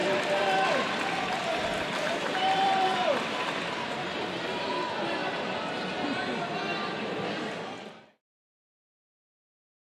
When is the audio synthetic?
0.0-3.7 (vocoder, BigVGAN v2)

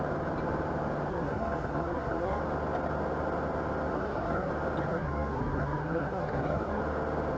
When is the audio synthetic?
1.1-2.4 (codec, SNAC); 3.9-4.5; 4.9-6.8

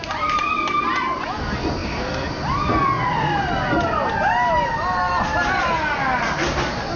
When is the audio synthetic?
none

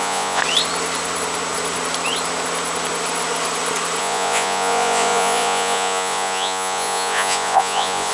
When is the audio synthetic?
0.0-0.4 (vocoder, Vocos); 4.0-8.1

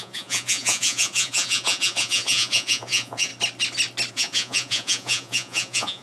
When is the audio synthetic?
0.0-3.3 (vocoder, Vocos); 4.1-6.0

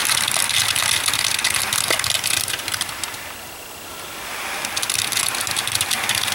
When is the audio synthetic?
none

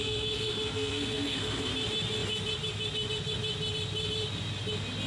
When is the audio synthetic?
0.0-1.7 (codec, SNAC)